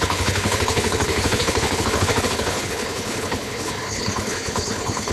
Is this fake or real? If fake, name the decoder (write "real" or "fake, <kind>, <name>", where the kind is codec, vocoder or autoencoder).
fake, codec, HILCodec